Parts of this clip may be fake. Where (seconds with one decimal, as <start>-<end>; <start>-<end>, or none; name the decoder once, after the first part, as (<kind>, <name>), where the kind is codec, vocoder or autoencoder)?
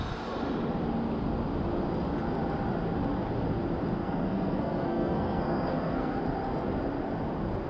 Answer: 4.0-6.2 (codec, SNAC)